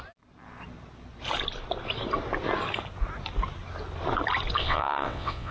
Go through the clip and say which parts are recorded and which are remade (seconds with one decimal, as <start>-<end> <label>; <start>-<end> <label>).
0.0-4.6 recorded; 4.6-5.5 remade